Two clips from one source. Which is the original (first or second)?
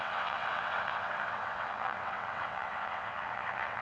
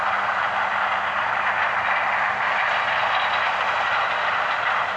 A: second